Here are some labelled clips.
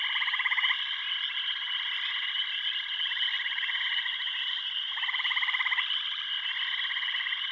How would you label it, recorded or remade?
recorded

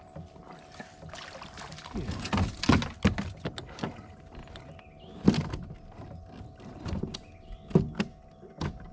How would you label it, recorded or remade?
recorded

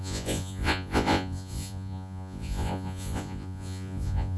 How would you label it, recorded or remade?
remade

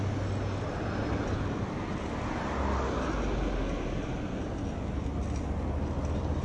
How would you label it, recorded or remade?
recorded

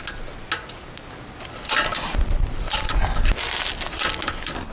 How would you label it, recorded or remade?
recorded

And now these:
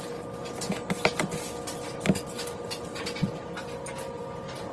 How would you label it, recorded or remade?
recorded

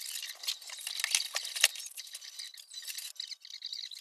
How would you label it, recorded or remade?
recorded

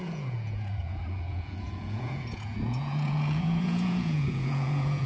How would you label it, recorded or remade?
remade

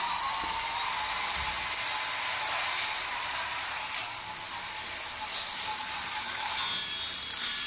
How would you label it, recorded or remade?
recorded